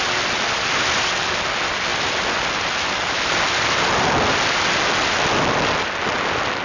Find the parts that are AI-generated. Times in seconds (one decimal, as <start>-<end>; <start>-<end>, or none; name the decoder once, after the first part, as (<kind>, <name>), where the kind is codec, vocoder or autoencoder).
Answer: none